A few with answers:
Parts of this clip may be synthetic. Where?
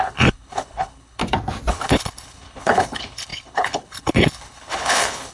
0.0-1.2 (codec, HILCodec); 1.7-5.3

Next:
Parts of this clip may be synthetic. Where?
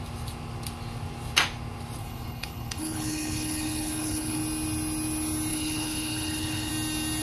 2.0-4.4 (codec, HILCodec); 5.5-6.7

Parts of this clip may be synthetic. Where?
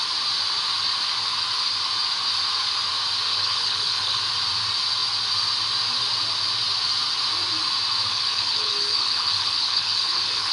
3.3-4.2 (codec, HILCodec); 8.1-10.5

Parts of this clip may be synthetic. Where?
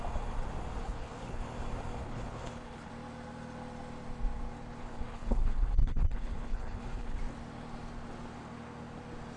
0.8-1.4 (codec, HILCodec); 2.0-2.9; 4.8-7.2